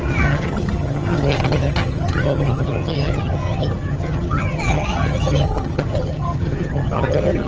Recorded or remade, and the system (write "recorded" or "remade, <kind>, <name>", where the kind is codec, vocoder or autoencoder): remade, vocoder, HiFi-GAN